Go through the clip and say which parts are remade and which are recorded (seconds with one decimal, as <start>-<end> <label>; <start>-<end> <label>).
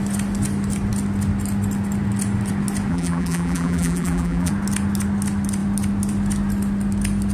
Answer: 0.0-2.9 recorded; 2.9-4.5 remade; 4.5-7.3 recorded